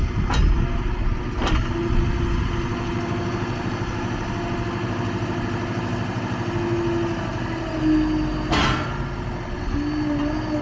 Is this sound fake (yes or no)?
no